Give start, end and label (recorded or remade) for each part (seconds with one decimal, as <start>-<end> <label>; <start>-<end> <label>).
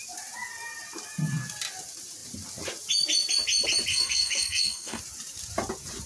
0.0-3.9 recorded; 3.9-5.0 remade; 5.0-6.1 recorded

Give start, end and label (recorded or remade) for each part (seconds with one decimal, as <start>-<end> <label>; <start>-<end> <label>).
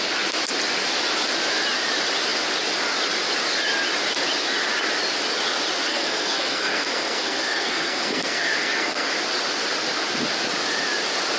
0.0-5.9 recorded; 5.9-9.1 remade; 9.1-11.4 recorded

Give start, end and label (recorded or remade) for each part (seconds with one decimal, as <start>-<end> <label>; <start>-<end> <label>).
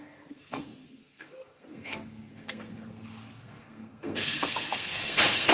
0.0-5.5 remade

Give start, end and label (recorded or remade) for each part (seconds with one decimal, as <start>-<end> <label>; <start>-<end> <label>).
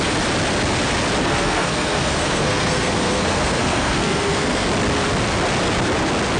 0.0-1.2 recorded; 1.2-4.7 remade; 4.7-6.4 recorded